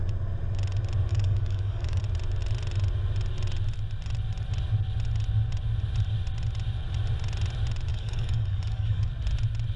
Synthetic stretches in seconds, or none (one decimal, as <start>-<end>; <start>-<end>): 1.1-2.0; 7.9-9.1